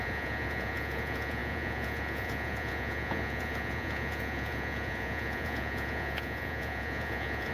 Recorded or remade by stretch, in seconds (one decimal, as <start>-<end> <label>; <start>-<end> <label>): 0.0-7.5 remade